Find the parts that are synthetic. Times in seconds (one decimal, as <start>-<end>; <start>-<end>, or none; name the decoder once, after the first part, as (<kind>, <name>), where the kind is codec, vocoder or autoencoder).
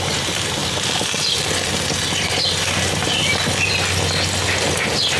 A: none